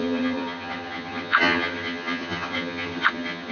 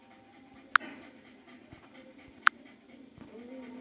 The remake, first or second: first